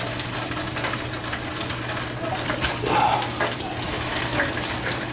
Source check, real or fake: real